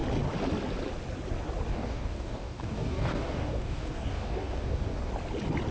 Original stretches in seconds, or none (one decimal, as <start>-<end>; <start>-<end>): 0.0-1.7; 5.1-5.7